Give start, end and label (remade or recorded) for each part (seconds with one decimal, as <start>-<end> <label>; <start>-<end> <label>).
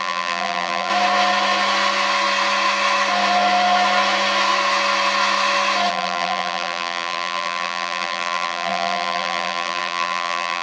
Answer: 0.0-0.9 remade; 0.9-5.9 recorded; 5.9-10.6 remade